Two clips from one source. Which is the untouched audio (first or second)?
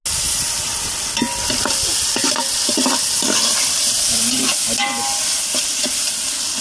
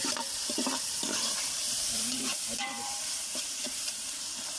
first